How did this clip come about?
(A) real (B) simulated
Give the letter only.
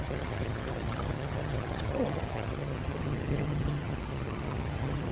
B